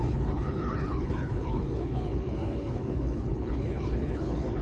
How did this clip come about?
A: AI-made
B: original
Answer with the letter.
A